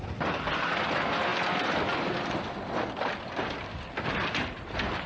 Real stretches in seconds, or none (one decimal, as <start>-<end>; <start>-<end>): 0.0-5.1